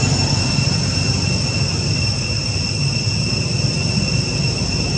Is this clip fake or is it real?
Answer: real